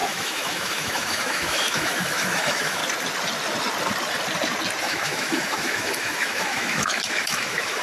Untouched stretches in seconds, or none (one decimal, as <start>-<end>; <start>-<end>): 2.8-4.8